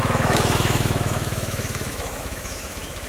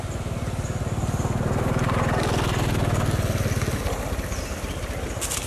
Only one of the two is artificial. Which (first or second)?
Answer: first